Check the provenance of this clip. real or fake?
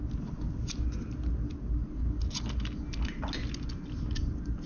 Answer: real